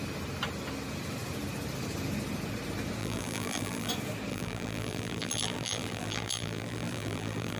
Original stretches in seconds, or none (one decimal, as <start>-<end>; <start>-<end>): 0.0-3.0; 3.9-4.3